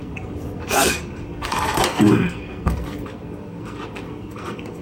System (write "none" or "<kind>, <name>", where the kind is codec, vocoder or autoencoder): codec, SNAC